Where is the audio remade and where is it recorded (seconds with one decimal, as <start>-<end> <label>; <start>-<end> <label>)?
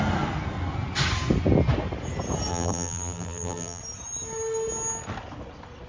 0.0-2.5 recorded; 2.5-3.8 remade; 3.8-5.9 recorded